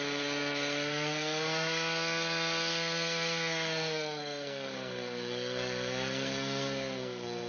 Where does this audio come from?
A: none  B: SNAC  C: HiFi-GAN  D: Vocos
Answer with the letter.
B